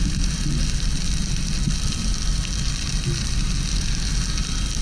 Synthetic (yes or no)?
no